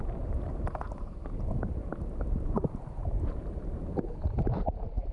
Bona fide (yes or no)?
no